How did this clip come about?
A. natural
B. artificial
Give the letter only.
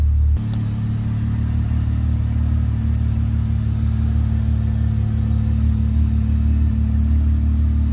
A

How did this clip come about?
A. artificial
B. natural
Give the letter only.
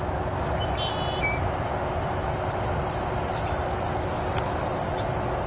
B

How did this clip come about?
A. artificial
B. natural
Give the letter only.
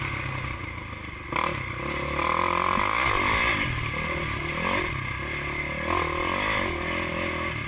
B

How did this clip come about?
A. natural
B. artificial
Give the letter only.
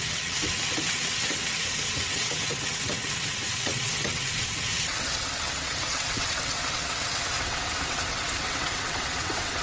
B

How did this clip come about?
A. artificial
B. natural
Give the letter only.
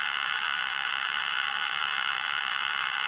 A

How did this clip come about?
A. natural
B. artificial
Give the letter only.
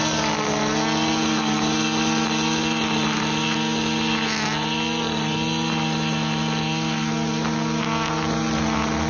A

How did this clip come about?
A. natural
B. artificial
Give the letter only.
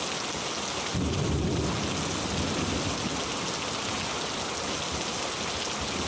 A